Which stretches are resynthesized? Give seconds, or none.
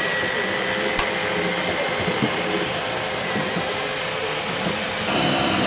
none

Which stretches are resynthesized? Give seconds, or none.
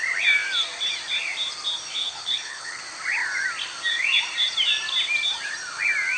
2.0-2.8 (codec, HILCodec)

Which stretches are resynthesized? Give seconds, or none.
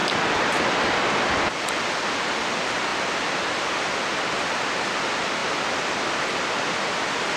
0.0-1.5 (vocoder, BigVGAN v2)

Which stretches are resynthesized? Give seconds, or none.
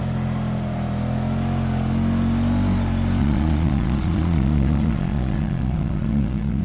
3.2-6.6 (vocoder, Vocos)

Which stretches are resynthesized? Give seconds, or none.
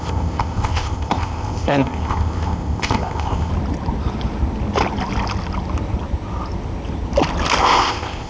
0.0-3.5 (codec, ZipCodec); 7.6-8.3